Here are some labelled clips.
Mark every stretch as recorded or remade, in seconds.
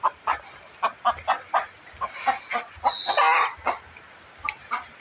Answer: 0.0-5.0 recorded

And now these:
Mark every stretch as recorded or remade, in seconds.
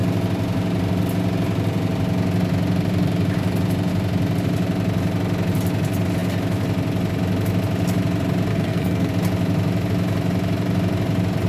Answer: 0.0-8.5 recorded; 8.5-9.1 remade; 9.1-11.5 recorded